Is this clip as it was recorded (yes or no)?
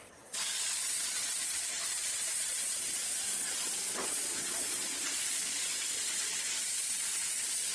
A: no